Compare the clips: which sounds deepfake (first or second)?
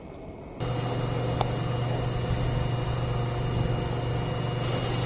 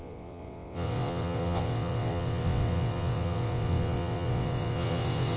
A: second